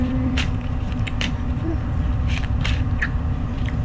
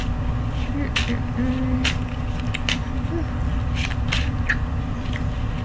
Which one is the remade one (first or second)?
first